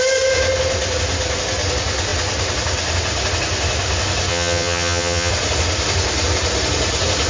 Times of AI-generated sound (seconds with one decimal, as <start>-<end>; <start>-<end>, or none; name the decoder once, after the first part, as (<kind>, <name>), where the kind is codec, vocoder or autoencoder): 4.3-5.3 (vocoder, HiFi-GAN)